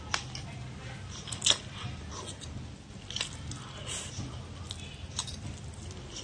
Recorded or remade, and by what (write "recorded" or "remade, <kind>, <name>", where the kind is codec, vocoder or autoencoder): recorded